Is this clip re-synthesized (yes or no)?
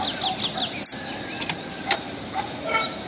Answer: no